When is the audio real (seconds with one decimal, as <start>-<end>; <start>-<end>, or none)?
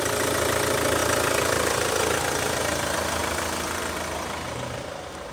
0.0-1.0; 2.6-3.2; 4.8-5.3